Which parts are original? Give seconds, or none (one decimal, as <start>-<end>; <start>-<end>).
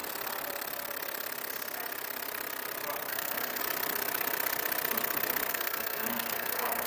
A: 0.0-3.1; 3.6-5.5